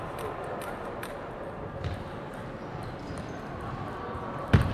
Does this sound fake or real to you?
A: real